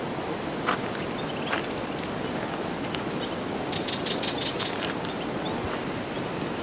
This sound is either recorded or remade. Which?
recorded